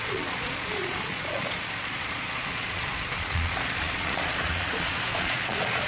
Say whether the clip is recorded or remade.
remade